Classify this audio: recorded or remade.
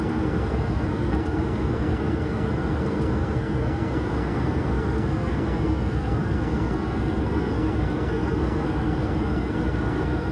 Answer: remade